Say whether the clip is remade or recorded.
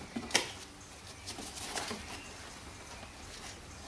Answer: recorded